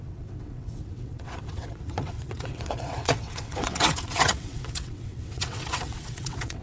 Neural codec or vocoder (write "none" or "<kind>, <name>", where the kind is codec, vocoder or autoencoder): vocoder, WaveNeXt